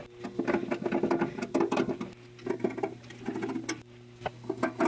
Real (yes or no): yes